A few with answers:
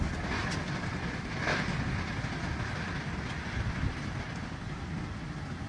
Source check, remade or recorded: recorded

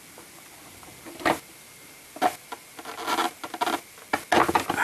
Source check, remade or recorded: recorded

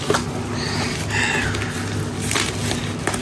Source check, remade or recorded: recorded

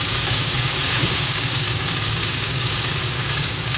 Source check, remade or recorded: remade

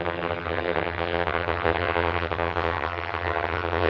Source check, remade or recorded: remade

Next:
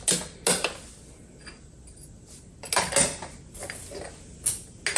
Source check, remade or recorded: recorded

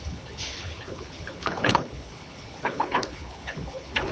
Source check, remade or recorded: remade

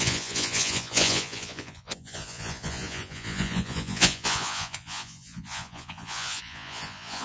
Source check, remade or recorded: remade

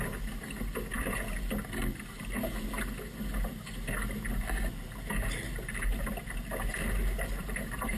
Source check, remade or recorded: recorded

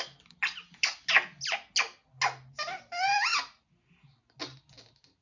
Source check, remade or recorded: recorded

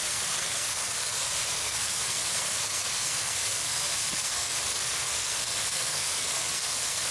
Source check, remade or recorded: remade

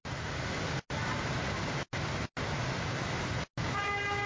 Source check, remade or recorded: recorded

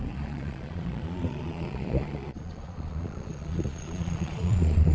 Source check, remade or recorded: remade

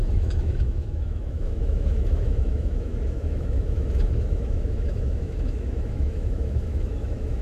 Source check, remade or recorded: remade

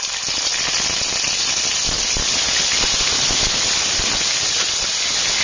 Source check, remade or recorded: recorded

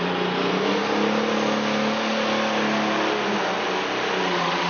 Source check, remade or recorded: recorded